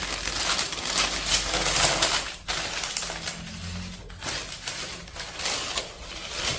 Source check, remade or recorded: recorded